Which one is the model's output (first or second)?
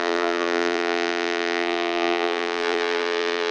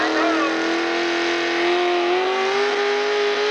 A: first